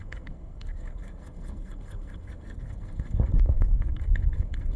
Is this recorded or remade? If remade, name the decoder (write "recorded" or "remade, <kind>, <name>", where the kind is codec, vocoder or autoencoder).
remade, codec, SNAC